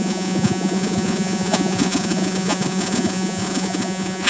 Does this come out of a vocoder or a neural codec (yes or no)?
yes